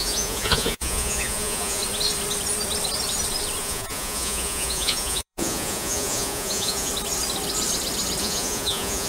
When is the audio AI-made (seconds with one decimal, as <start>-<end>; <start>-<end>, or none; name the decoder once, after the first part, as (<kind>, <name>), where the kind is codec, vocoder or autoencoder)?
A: 0.0-1.8 (vocoder, Vocos); 3.6-6.9; 8.2-9.1